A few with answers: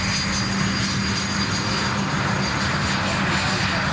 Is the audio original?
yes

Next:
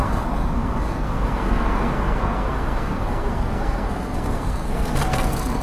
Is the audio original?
no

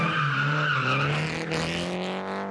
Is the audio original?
yes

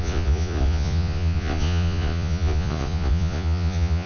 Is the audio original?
no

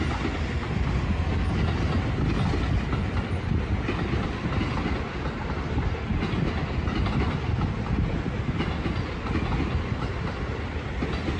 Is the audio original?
yes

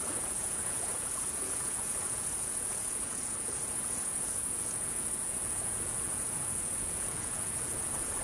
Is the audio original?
no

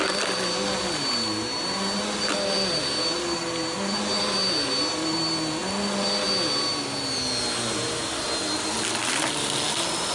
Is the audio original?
yes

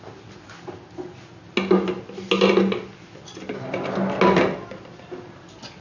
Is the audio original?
yes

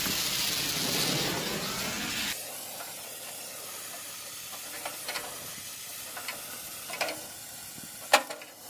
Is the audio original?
yes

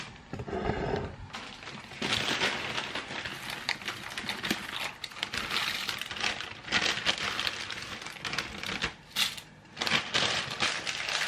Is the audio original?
yes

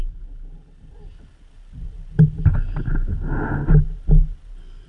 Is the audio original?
yes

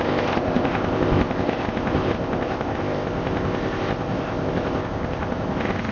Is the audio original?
no